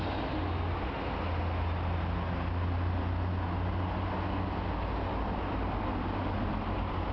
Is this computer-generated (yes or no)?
no